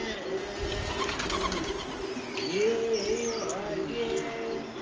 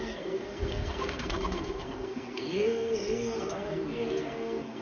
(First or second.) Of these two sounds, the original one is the first